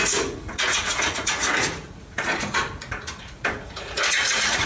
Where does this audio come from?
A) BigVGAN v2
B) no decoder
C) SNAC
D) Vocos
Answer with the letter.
D